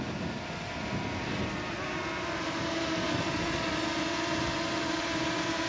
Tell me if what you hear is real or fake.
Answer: fake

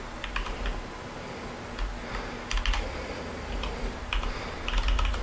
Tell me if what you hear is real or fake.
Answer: real